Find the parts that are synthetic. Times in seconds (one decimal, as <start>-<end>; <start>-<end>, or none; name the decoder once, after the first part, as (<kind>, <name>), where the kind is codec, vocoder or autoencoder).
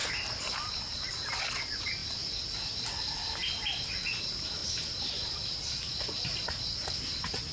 0.0-1.3 (vocoder, BigVGAN v2); 2.0-2.7; 4.6-7.0